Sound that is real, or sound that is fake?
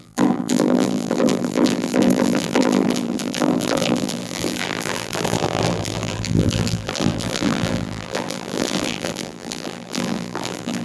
fake